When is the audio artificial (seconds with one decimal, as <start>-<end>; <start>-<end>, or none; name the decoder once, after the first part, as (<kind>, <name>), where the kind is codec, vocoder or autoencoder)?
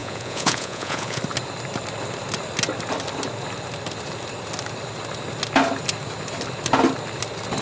0.0-1.2 (vocoder, Vocos)